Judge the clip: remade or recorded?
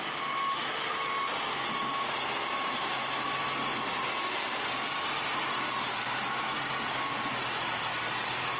recorded